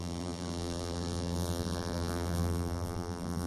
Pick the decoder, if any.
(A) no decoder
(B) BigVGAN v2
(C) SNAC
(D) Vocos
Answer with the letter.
B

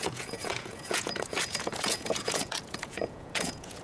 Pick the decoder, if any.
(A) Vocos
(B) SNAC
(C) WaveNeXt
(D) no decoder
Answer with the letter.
A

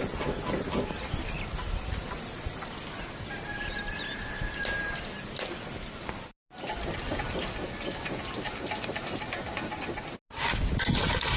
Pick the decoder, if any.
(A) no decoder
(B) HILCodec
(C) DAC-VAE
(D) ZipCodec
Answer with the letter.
A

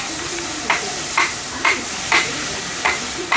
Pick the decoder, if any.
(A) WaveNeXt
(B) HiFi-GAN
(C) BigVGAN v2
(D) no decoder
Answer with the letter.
C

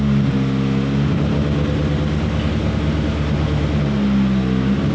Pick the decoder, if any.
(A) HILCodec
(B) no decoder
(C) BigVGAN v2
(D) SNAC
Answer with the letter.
B